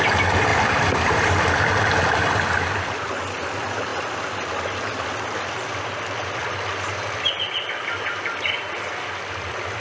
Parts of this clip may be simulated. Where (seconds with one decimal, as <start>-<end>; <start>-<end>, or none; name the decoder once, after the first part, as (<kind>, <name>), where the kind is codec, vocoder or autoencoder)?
none